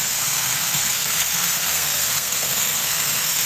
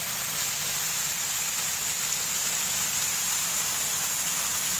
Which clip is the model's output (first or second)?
first